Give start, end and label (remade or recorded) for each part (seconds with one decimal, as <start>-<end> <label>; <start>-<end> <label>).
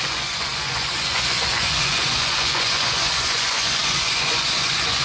0.0-5.0 remade